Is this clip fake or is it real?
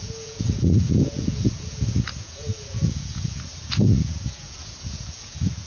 fake